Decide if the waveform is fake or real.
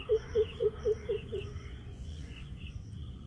fake